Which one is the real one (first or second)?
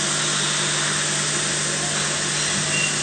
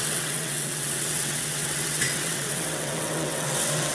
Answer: first